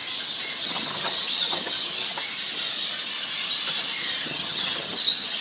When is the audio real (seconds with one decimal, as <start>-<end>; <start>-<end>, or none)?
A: 0.0-0.6; 1.9-4.2